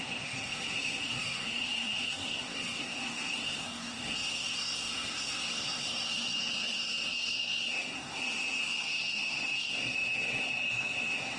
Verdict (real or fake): fake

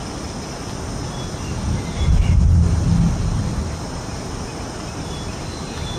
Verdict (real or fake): real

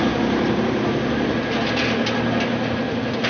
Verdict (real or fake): real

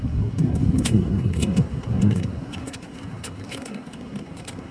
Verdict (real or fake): fake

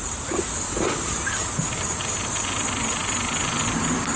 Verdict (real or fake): real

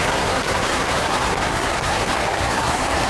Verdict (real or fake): fake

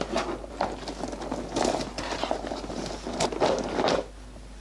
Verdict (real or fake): real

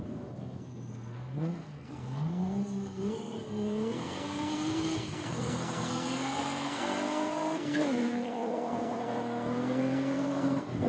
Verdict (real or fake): fake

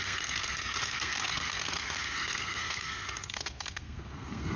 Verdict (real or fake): fake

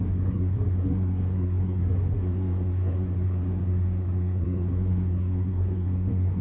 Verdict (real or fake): fake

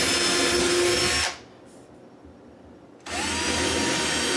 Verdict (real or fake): real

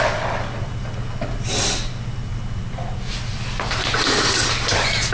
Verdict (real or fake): real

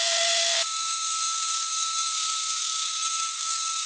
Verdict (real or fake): fake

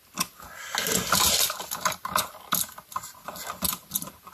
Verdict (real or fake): real